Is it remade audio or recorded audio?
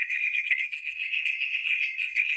remade